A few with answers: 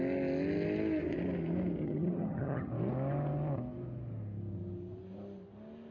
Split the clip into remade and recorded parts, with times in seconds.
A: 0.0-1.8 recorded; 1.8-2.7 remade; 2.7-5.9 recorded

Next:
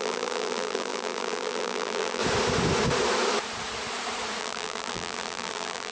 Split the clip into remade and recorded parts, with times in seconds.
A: 0.0-2.2 remade; 2.2-4.4 recorded; 4.4-5.9 remade